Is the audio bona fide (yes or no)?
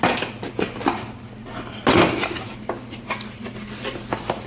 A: yes